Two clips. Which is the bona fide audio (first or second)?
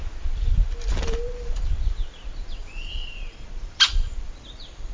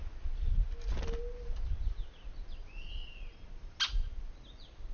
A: second